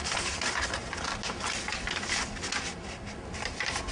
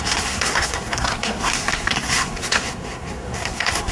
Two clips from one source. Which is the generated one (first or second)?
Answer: second